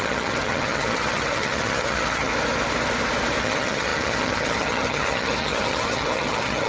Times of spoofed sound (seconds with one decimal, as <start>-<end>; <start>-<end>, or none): 0.0-2.3; 3.4-6.7